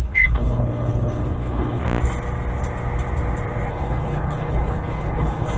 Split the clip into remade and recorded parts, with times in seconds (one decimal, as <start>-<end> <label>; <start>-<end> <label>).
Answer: 0.0-1.8 remade; 1.8-3.7 recorded; 3.7-5.6 remade